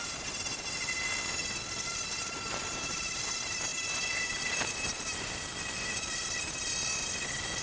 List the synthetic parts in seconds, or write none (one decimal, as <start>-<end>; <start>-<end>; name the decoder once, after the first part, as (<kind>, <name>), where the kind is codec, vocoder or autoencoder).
3.7-5.3 (vocoder, BigVGAN v2)